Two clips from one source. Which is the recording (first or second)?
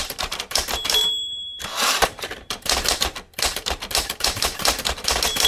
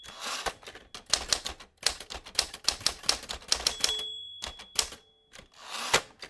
second